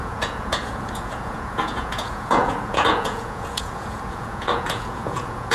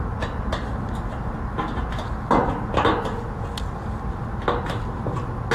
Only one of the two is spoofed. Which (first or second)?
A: first